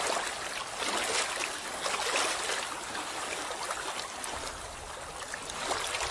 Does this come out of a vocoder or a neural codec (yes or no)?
no